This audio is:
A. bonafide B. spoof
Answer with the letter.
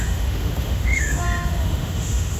B